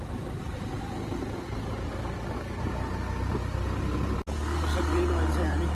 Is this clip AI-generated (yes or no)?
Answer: no